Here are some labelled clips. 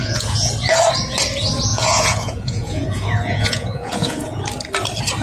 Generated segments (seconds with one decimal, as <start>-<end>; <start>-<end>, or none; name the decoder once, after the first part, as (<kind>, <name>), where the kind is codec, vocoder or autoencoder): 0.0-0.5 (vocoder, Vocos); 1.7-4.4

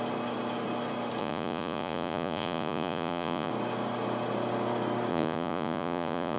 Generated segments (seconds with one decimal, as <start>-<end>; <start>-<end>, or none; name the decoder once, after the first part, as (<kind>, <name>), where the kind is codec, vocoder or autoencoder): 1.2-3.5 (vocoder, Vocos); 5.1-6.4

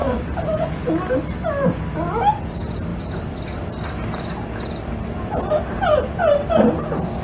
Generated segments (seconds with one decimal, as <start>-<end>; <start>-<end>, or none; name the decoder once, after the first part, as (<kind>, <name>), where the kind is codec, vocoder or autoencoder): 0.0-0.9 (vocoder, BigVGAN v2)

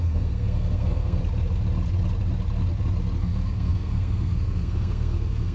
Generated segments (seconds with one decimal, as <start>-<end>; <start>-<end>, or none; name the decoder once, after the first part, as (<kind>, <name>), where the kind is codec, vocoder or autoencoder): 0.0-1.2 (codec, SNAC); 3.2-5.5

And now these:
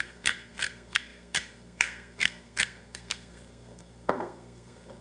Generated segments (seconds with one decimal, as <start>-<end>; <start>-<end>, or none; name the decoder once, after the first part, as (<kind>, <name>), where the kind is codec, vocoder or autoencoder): 0.0-5.0 (codec, SNAC)

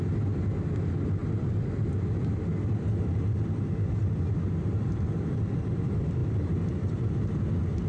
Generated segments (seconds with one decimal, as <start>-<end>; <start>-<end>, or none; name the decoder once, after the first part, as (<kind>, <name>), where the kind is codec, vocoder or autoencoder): 1.2-5.8 (vocoder, BigVGAN v2); 6.2-7.1

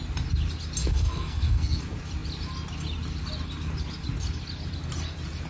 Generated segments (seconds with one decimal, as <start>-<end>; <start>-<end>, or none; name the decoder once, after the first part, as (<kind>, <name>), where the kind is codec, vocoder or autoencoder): 0.8-1.8 (codec, SNAC)

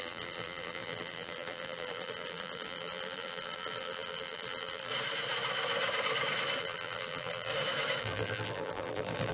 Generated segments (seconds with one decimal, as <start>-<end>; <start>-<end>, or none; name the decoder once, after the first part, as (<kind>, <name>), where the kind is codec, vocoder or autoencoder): 0.0-4.9 (vocoder, BigVGAN v2); 6.6-7.5; 8.0-9.3